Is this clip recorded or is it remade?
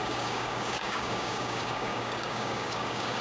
remade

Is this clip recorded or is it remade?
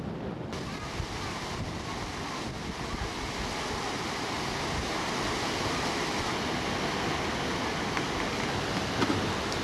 recorded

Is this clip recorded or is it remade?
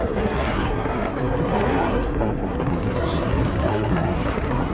remade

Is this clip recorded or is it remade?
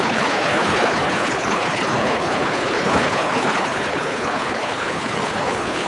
remade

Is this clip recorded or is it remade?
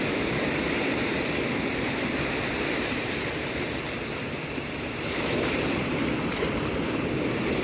remade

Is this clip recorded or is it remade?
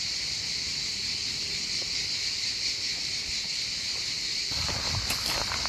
recorded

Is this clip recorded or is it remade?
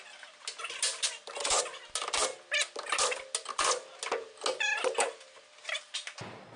recorded